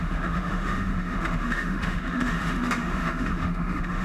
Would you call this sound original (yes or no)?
no